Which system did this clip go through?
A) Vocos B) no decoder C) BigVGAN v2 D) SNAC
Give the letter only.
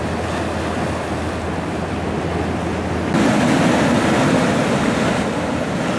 B